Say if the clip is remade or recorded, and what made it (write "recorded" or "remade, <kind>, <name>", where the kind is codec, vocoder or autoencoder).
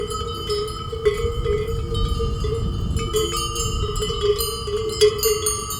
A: recorded